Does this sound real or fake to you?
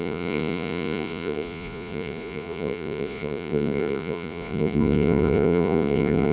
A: fake